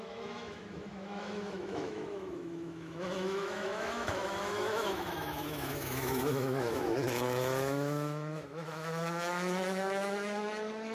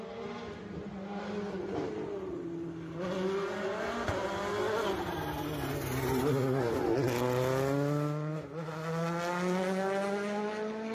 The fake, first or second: first